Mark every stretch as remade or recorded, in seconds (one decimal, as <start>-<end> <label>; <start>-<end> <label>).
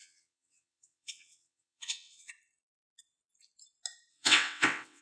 0.0-2.3 remade; 2.3-4.1 recorded; 4.1-5.0 remade